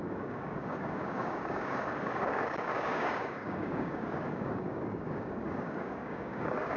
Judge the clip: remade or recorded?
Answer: remade